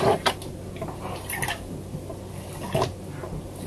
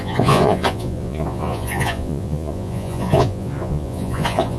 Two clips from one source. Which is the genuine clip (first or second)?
first